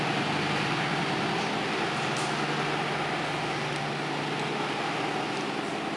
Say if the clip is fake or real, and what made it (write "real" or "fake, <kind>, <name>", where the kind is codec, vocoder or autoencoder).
real